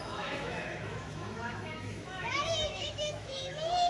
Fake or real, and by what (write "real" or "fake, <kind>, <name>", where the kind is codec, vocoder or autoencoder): fake, autoencoder, DAC-VAE